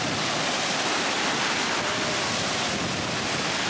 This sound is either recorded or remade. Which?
recorded